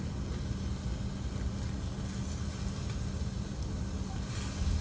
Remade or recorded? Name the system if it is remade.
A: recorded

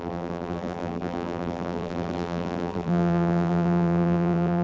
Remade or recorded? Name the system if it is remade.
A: remade, vocoder, BigVGAN v2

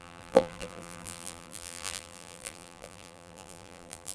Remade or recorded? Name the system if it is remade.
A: remade, vocoder, BigVGAN v2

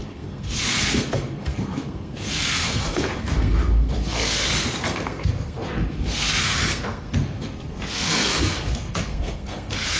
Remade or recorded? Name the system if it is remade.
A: remade, codec, SNAC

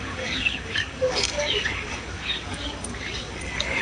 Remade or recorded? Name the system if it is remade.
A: remade, codec, DAC